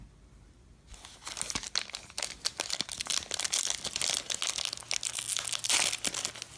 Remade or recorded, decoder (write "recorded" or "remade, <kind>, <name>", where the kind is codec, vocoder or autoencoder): recorded